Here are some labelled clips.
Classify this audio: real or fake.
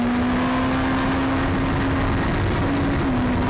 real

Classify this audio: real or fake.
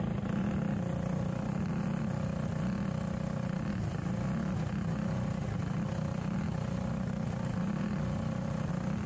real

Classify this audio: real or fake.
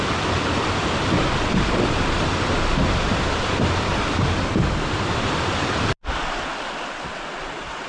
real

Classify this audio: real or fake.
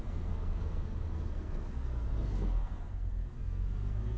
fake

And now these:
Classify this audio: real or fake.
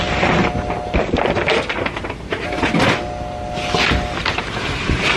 real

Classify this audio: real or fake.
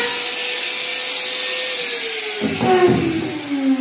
real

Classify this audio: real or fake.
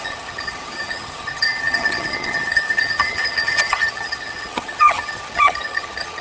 fake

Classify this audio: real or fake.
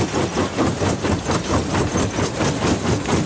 fake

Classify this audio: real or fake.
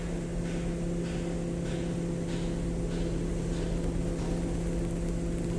real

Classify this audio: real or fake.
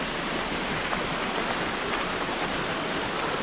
real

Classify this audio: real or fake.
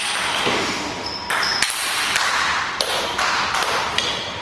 real